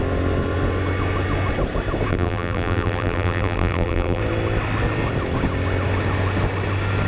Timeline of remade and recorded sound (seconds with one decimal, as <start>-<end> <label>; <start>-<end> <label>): 0.0-2.1 recorded; 2.1-4.2 remade; 4.2-7.1 recorded